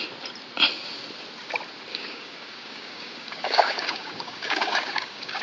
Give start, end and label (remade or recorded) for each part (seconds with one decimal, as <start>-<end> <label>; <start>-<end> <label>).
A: 0.0-1.9 recorded; 1.9-5.4 remade